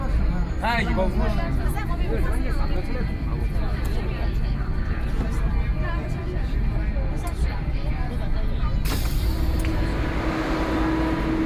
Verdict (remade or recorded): recorded